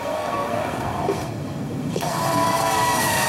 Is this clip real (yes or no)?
no